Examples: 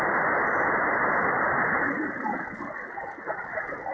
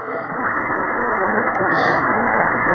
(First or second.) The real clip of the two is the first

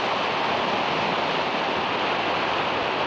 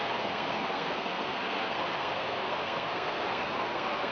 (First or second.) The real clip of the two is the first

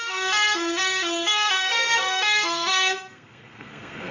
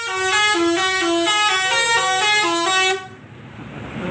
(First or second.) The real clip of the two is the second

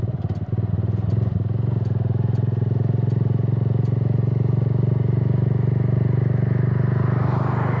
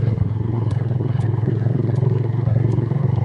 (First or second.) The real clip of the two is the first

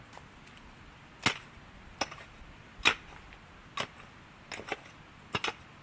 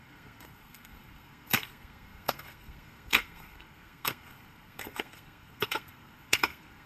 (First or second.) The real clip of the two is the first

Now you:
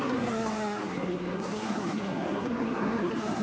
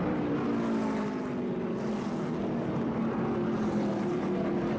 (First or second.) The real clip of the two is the second